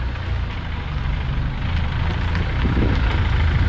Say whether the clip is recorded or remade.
recorded